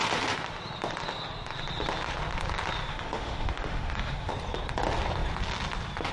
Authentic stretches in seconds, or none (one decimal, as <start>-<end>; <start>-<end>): 0.0-2.9; 4.3-6.1